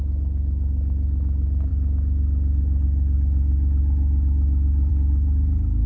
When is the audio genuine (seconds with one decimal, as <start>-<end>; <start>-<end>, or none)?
0.0-5.9

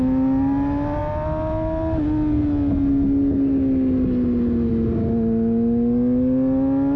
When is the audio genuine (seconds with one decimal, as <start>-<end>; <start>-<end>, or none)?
0.0-7.0

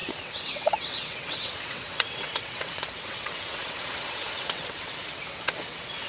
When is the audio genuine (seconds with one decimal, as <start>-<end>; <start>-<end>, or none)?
none

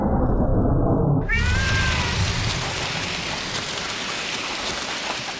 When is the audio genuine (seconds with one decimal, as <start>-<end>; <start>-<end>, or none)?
0.0-5.4

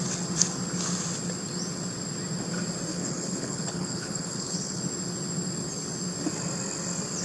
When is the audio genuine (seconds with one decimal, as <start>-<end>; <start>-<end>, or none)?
0.0-2.9; 4.8-7.2

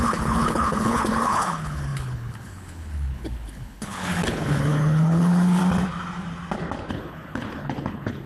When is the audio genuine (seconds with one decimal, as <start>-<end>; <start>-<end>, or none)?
5.6-6.9

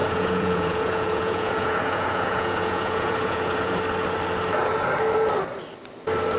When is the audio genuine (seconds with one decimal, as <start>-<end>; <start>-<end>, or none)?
3.8-6.4

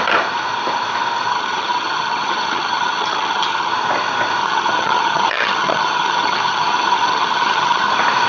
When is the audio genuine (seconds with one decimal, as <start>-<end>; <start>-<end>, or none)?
0.0-1.3; 3.7-4.4; 7.9-8.3